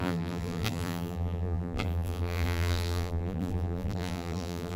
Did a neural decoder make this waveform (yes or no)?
yes